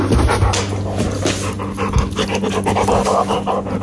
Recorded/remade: recorded